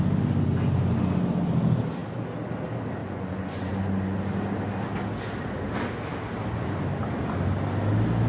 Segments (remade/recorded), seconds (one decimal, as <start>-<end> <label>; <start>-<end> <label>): 0.0-3.0 recorded; 3.0-3.7 remade; 3.7-8.3 recorded